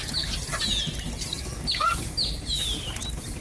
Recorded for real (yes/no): yes